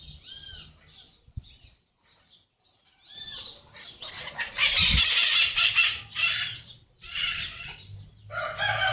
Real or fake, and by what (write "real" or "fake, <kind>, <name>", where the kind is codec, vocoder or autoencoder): real